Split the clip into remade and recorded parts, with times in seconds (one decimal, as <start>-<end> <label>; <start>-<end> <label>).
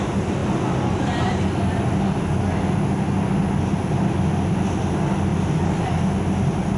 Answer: 0.0-6.8 recorded